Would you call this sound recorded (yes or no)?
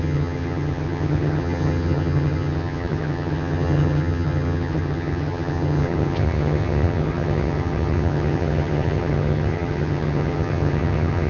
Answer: no